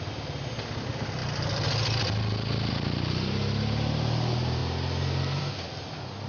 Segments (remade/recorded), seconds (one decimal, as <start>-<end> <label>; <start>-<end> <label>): 0.0-6.3 recorded